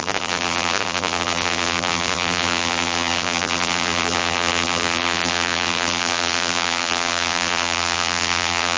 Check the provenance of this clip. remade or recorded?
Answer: remade